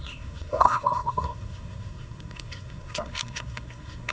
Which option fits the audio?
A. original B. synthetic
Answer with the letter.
B